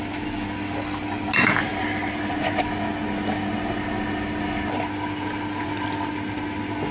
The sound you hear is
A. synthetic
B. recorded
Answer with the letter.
B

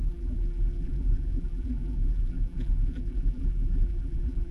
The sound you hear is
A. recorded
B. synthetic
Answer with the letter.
B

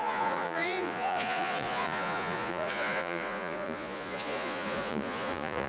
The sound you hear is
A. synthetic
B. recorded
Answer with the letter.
A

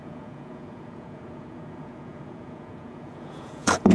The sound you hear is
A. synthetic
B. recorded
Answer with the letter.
A